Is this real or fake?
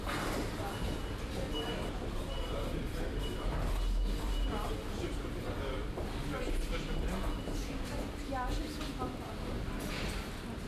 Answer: real